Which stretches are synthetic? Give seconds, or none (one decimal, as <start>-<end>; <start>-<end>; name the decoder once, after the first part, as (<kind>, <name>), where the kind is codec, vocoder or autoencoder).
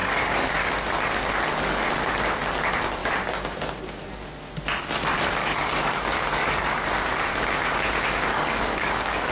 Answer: 0.0-0.7 (codec, DAC); 5.4-7.0; 8.3-9.3